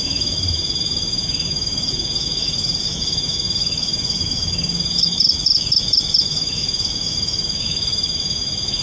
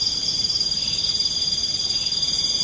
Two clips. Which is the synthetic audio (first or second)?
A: first